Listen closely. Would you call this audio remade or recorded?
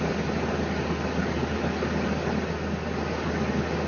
recorded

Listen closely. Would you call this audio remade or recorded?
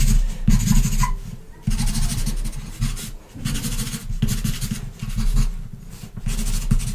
recorded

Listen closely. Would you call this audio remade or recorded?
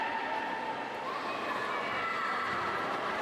recorded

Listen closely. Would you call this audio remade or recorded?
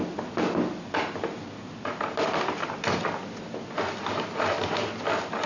recorded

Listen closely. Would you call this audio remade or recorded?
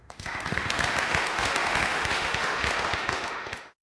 remade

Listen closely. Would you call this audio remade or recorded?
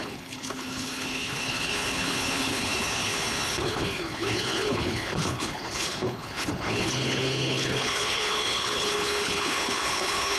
remade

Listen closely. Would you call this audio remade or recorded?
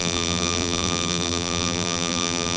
remade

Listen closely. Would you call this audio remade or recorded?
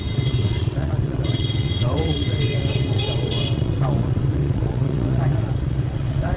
remade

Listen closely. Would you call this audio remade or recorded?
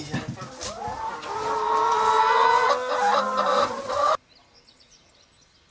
recorded